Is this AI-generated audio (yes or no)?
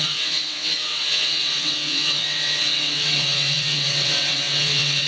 yes